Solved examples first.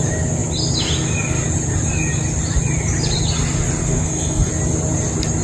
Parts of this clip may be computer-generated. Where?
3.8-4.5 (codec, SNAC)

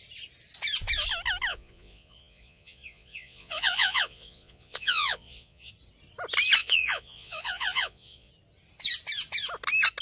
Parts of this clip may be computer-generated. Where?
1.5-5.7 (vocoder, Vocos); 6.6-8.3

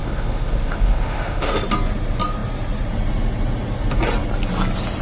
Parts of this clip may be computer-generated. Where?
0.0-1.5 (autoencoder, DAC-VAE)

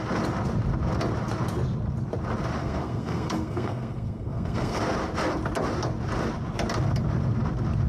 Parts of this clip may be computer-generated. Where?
2.6-4.8 (codec, SNAC)

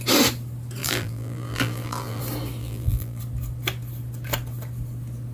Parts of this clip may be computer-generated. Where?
0.8-2.2 (vocoder, BigVGAN v2); 2.6-3.2